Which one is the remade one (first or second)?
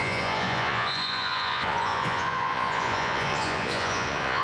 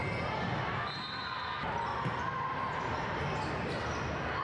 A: first